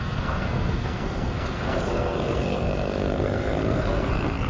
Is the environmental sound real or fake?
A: fake